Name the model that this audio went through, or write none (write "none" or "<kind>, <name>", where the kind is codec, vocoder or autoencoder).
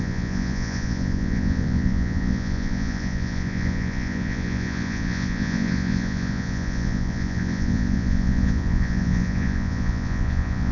vocoder, Vocos